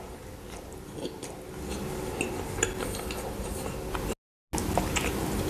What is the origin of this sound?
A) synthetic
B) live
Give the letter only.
B